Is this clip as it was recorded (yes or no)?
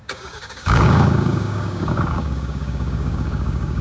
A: no